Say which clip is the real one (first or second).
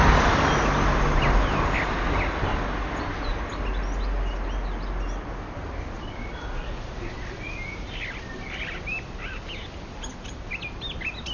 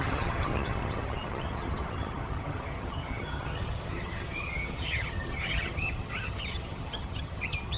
first